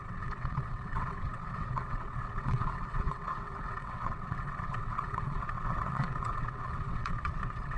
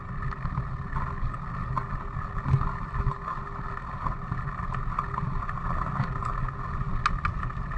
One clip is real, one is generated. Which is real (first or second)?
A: second